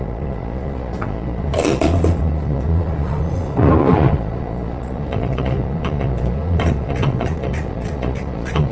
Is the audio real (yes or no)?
no